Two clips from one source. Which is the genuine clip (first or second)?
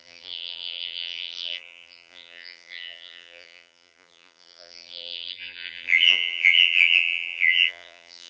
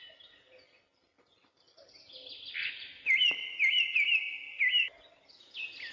second